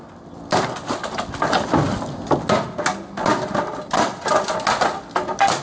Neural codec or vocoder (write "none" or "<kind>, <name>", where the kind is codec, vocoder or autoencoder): none